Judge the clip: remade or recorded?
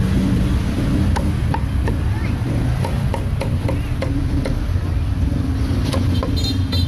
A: recorded